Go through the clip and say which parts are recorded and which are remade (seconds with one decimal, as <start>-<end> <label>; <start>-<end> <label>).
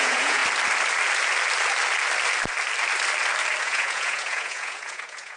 0.0-0.4 remade; 0.4-3.6 recorded; 3.6-5.4 remade